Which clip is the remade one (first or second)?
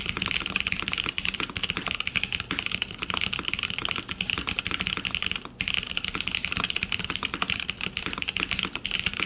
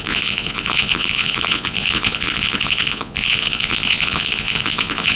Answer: second